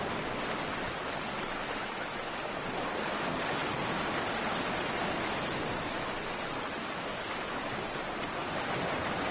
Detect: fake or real real